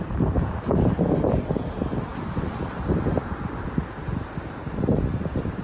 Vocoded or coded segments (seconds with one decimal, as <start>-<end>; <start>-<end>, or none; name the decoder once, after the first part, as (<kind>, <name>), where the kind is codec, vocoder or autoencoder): none